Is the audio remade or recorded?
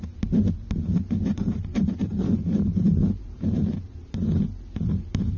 remade